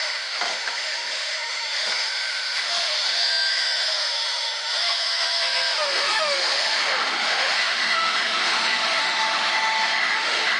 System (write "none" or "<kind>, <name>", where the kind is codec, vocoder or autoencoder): autoencoder, DAC-VAE